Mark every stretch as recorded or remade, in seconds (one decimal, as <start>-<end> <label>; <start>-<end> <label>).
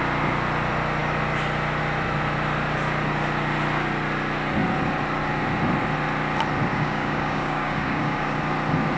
0.0-6.7 recorded; 6.7-8.4 remade; 8.4-9.0 recorded